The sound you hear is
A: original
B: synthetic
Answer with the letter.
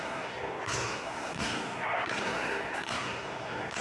B